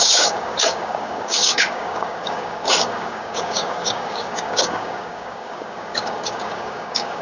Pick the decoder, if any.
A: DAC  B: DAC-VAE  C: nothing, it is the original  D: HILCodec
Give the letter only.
A